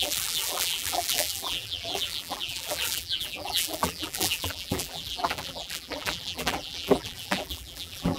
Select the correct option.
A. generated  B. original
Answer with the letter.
A